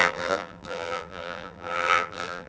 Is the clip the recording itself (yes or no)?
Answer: no